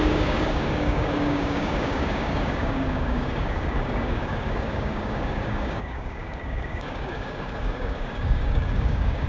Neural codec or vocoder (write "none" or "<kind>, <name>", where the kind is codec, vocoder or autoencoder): codec, DAC